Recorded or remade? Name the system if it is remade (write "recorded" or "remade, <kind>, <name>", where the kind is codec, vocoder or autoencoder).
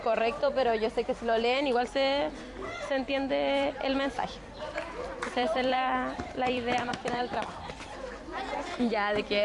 remade, vocoder, BigVGAN v2